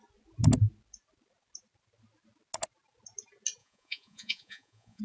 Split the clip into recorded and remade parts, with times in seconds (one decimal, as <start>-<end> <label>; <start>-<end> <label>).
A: 0.0-3.6 recorded; 3.6-5.0 remade